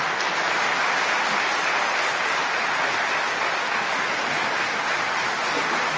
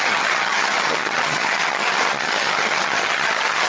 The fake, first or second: second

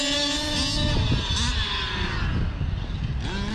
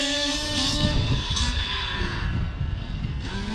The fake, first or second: second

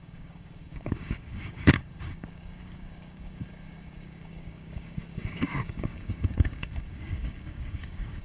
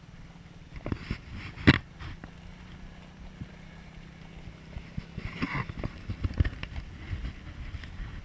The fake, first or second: first